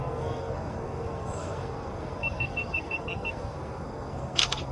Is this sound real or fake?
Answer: fake